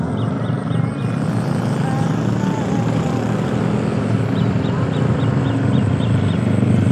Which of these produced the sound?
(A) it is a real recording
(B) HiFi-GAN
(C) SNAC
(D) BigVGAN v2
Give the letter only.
A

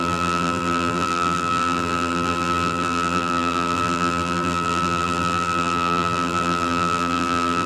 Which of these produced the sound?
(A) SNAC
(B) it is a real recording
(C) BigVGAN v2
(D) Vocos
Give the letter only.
C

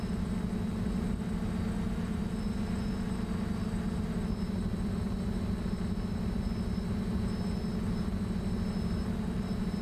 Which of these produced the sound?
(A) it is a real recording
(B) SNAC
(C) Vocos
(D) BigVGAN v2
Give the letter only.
D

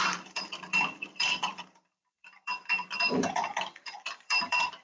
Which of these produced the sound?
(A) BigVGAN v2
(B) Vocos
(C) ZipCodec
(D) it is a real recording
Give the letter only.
A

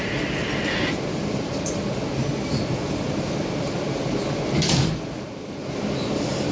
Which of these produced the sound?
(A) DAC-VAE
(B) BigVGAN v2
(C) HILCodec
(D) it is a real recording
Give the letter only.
D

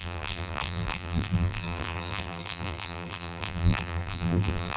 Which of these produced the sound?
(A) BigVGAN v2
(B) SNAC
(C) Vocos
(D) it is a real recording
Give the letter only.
A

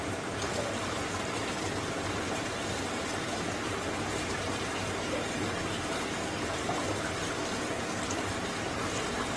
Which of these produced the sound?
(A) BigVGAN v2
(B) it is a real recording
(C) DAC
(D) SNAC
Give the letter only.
A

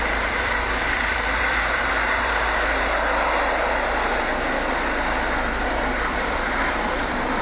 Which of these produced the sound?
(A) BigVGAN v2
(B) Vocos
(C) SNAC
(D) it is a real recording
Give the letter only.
A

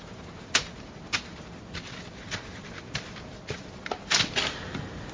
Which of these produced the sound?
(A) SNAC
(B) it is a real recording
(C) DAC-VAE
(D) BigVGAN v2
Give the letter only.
B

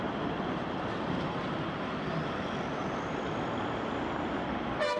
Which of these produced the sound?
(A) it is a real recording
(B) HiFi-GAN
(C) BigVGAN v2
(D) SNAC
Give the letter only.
A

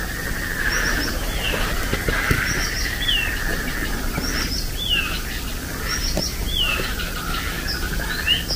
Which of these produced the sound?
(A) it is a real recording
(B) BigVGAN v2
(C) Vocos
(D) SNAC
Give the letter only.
A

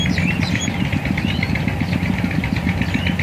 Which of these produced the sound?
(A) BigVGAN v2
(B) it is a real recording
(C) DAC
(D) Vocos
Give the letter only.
B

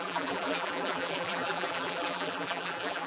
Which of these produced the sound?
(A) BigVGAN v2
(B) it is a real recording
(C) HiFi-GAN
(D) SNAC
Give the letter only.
A